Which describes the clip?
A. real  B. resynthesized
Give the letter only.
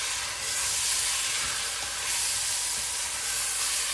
A